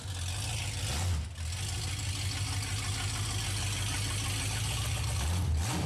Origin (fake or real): real